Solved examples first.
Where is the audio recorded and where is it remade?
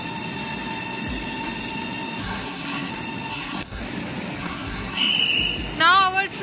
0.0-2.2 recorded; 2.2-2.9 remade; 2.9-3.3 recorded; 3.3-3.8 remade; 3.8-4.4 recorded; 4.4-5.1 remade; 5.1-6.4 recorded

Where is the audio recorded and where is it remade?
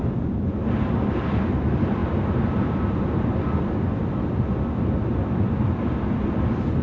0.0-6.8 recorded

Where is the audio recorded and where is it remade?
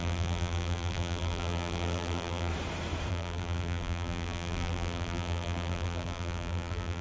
0.0-2.5 remade; 2.5-3.1 recorded; 3.1-7.0 remade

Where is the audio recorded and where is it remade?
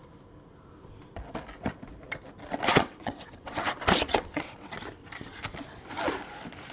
0.0-2.7 recorded; 2.7-3.6 remade; 3.6-4.1 recorded; 4.1-4.7 remade; 4.7-6.7 recorded